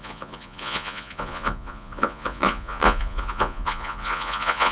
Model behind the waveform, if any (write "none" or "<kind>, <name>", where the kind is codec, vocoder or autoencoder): vocoder, Vocos